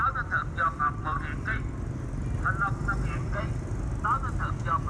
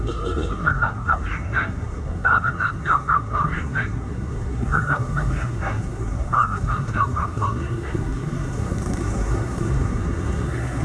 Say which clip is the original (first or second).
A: first